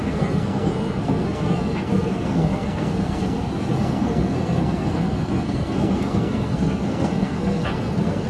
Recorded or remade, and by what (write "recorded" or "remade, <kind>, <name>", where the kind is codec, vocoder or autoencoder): remade, codec, SNAC